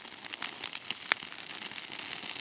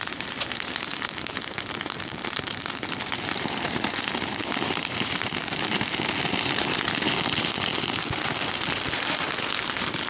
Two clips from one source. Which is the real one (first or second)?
first